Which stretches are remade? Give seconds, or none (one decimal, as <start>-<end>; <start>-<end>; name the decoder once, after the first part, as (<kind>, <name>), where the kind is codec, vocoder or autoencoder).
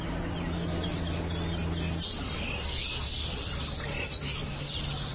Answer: none